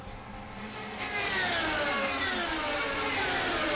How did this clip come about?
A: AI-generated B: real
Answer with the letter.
B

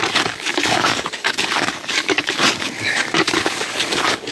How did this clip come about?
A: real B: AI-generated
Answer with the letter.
B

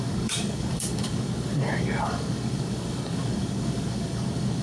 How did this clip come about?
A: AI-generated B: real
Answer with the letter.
A